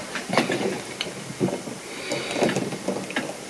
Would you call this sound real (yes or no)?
yes